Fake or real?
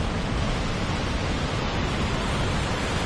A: real